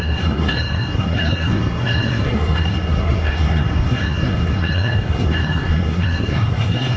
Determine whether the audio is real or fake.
fake